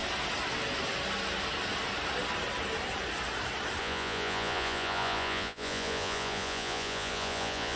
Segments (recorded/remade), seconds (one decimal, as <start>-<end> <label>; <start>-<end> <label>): 0.0-3.8 recorded; 3.8-7.8 remade